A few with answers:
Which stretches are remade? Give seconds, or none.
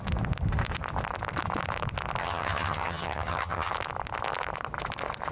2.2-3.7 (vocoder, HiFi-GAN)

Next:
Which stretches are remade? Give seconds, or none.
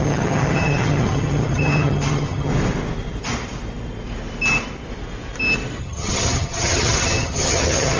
0.0-2.5 (vocoder, HiFi-GAN); 5.8-8.0